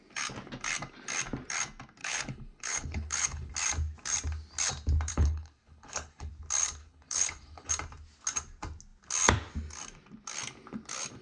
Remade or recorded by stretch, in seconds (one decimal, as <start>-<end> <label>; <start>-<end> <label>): 0.0-2.0 recorded; 2.0-3.5 remade; 3.5-5.1 recorded; 5.1-6.3 remade; 6.3-6.8 recorded; 6.8-7.7 remade; 7.7-11.2 recorded